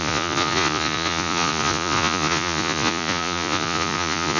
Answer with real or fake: fake